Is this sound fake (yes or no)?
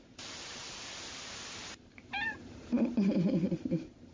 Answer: yes